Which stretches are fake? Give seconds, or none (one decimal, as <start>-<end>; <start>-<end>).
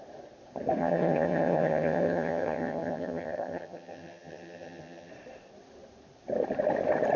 0.8-5.1